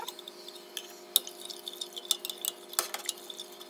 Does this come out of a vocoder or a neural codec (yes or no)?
no